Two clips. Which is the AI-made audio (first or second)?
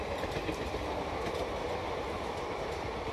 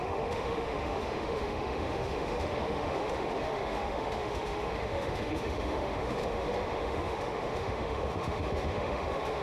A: second